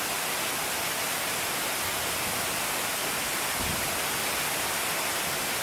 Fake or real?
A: real